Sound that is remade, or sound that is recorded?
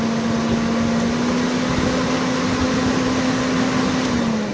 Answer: recorded